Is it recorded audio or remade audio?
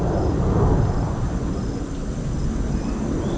recorded